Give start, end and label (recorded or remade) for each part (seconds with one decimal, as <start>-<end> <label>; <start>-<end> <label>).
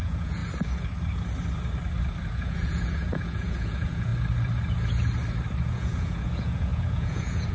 0.0-0.4 remade; 0.4-2.3 recorded; 2.3-4.1 remade; 4.1-5.6 recorded; 5.6-7.5 remade